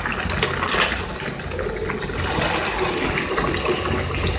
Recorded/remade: recorded